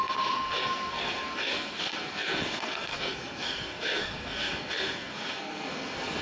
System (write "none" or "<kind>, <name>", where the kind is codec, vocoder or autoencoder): codec, SNAC